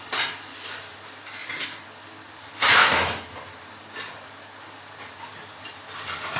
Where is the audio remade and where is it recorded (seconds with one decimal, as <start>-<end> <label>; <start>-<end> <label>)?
0.0-6.4 recorded